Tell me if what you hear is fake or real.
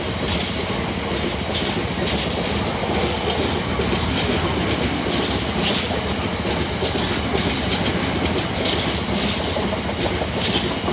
real